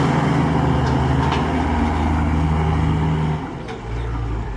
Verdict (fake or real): real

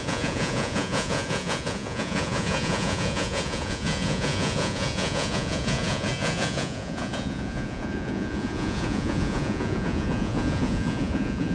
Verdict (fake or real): fake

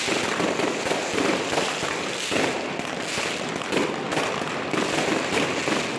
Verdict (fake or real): real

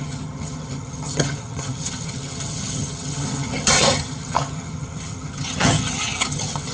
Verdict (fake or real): fake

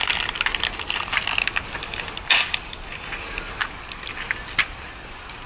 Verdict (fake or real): real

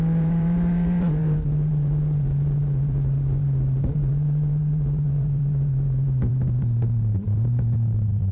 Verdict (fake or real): fake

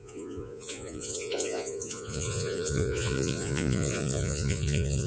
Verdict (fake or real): fake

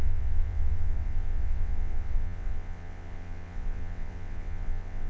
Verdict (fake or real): fake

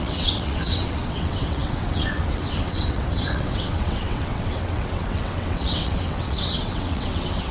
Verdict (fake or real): fake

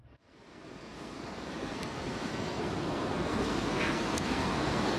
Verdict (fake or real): fake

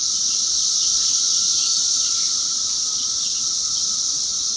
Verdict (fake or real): fake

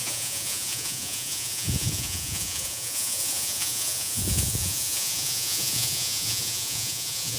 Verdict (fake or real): fake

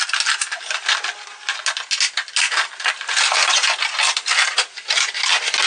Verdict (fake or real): real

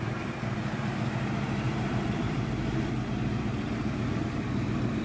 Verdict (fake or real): fake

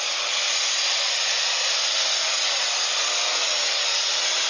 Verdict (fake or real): real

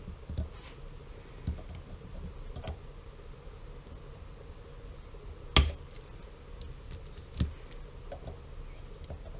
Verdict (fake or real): real